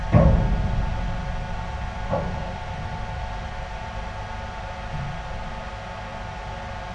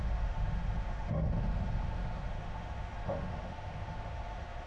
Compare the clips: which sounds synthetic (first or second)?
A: second